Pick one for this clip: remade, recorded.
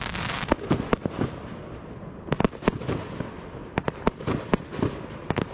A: recorded